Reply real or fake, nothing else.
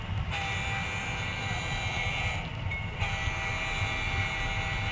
real